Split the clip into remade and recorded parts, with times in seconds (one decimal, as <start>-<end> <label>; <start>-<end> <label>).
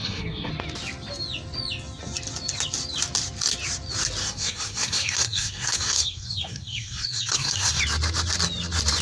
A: 0.0-0.5 remade; 0.5-4.2 recorded; 4.2-7.8 remade; 7.8-9.0 recorded